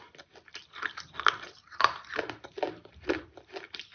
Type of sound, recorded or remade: recorded